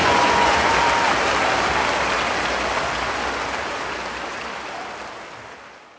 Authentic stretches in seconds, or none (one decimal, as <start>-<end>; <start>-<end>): 0.7-6.0